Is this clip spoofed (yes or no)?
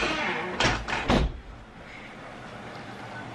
no